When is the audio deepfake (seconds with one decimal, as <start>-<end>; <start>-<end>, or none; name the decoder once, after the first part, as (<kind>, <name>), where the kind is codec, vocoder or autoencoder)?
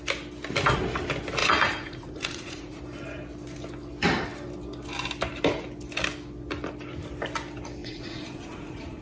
1.4-2.8 (vocoder, Vocos); 7.8-9.0